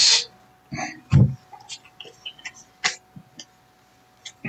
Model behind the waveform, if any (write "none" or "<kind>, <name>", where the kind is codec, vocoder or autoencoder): none